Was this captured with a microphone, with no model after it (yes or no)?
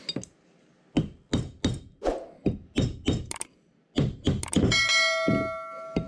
yes